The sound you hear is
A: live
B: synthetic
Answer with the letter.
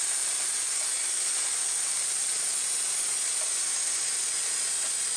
A